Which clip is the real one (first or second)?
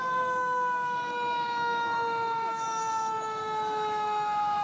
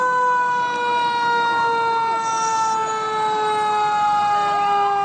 second